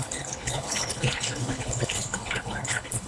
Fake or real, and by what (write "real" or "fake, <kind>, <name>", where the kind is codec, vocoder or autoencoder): fake, codec, HILCodec